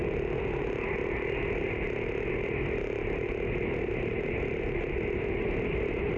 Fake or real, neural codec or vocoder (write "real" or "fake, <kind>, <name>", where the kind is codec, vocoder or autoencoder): real